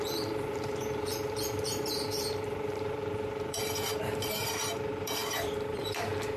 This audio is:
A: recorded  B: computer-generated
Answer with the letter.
B